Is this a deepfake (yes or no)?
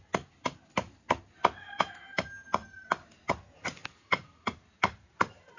no